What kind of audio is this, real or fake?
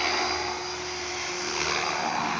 real